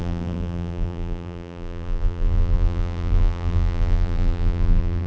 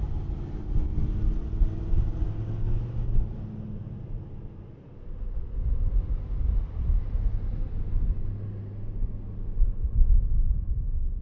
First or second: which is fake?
first